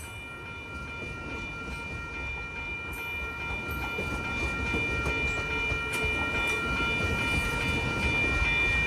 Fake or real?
real